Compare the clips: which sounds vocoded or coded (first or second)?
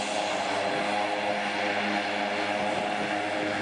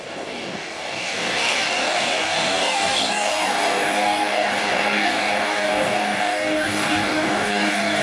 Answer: second